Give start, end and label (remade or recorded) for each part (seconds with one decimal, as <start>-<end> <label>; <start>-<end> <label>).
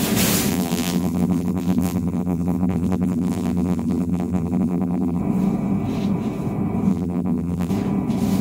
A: 0.0-0.5 recorded; 0.5-5.2 remade; 5.2-6.9 recorded; 6.9-7.7 remade; 7.7-8.4 recorded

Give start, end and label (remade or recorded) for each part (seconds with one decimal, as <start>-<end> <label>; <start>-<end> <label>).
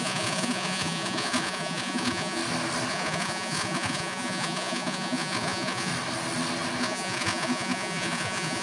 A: 0.0-2.4 remade; 2.4-2.9 recorded; 2.9-5.9 remade; 5.9-6.8 recorded; 6.8-8.6 remade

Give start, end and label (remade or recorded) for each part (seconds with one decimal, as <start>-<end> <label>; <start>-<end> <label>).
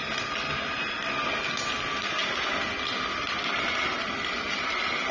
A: 0.0-5.1 recorded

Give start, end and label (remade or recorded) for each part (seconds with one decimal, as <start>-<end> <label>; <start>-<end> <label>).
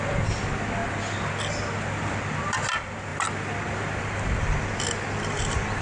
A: 0.0-5.8 recorded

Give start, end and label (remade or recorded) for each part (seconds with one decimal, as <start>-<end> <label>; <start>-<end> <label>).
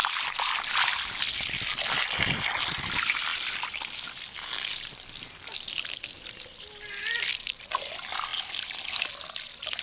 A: 0.0-9.8 recorded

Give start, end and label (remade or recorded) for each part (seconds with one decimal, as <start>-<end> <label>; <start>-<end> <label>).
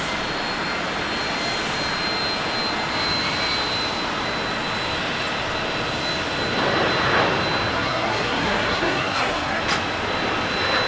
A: 0.0-7.7 recorded; 7.7-9.6 remade; 9.6-10.9 recorded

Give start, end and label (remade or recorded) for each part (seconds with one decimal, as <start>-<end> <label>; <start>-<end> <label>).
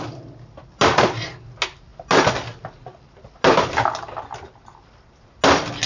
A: 0.0-5.9 recorded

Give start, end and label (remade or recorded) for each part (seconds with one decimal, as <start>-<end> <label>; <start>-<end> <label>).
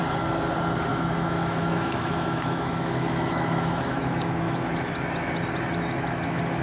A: 0.0-0.9 recorded; 0.9-4.9 remade; 4.9-6.6 recorded